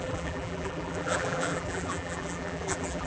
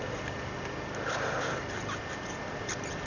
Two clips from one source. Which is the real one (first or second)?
second